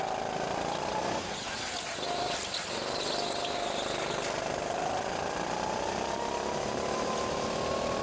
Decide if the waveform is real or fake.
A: real